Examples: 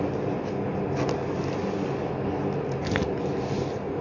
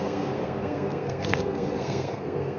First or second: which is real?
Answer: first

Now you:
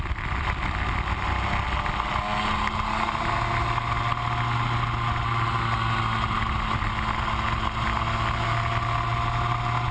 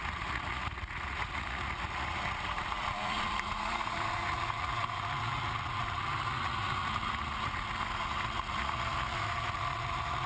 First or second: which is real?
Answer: first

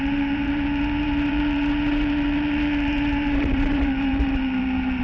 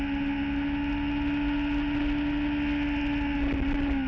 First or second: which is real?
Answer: second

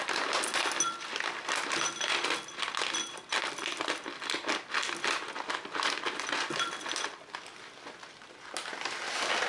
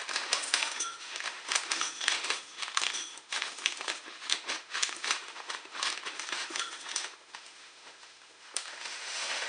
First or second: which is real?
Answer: first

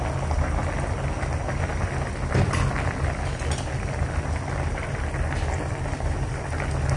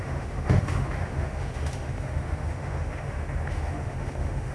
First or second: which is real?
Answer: first